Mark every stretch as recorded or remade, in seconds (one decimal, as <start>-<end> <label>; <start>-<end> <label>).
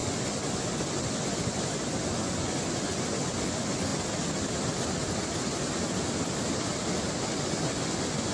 0.0-3.9 remade; 3.9-7.2 recorded; 7.2-8.3 remade